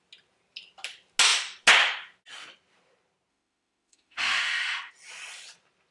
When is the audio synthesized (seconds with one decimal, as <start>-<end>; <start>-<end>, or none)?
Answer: 3.3-4.9